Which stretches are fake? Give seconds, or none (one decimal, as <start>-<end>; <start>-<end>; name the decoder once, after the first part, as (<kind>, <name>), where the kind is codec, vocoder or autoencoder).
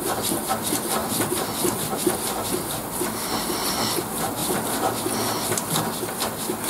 1.0-1.9 (vocoder, BigVGAN v2); 2.8-3.8